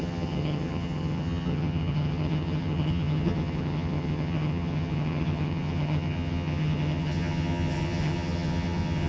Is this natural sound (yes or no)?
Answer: no